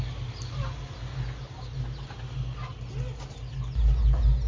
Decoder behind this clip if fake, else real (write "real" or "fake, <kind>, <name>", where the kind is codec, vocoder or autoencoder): real